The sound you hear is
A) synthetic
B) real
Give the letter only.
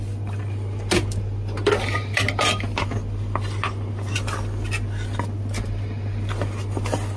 B